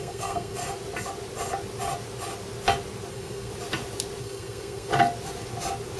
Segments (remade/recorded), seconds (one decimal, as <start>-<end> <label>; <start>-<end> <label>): 0.0-0.6 remade; 0.6-3.1 recorded; 3.1-3.5 remade; 3.5-4.2 recorded; 4.2-4.9 remade; 4.9-6.0 recorded